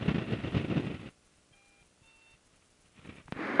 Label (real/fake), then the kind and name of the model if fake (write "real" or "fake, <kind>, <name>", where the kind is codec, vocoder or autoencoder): real